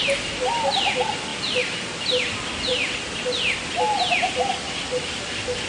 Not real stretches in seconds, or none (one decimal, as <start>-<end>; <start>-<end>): none